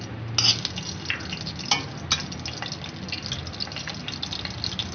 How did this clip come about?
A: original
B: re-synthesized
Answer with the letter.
A